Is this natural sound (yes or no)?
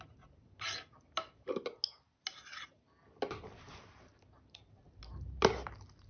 yes